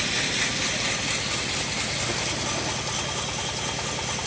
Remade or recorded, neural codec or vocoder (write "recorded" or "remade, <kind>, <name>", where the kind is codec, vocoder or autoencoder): recorded